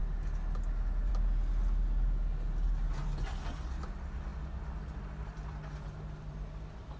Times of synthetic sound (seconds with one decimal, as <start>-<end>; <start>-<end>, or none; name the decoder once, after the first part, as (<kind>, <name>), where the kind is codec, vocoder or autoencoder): none